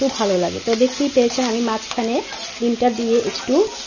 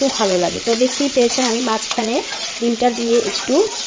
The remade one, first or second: second